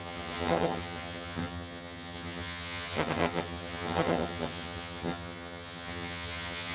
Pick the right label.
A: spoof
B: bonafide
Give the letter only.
A